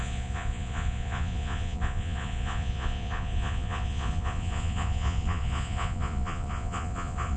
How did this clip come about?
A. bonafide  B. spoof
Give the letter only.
B